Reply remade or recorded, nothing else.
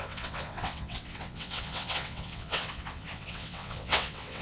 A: remade